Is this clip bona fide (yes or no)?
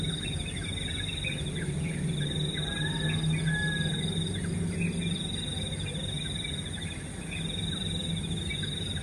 yes